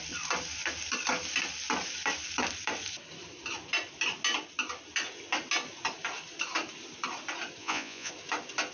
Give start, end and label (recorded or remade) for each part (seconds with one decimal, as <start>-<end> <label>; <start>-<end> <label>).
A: 0.0-7.6 recorded; 7.6-8.1 remade; 8.1-8.7 recorded